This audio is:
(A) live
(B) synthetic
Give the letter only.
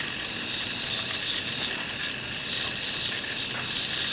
A